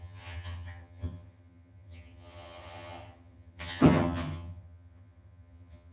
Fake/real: fake